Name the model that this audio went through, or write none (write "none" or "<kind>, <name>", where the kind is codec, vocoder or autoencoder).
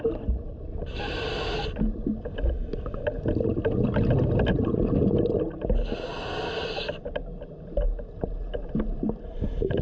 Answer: none